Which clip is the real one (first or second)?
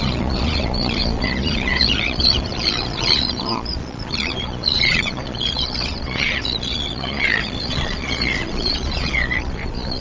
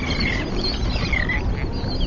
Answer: second